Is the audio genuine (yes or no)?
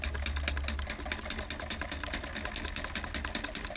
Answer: yes